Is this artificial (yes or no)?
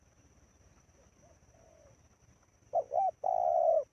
yes